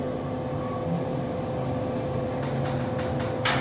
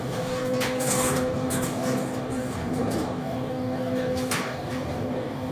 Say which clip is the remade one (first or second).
second